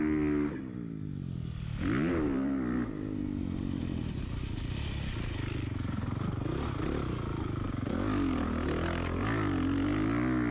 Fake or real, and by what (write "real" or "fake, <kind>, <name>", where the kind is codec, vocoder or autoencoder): real